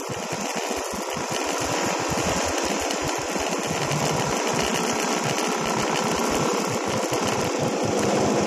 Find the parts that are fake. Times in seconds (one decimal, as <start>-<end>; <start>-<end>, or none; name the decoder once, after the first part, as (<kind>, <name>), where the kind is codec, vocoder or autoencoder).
none